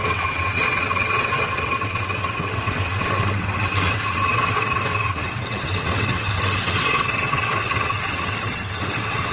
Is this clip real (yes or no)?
no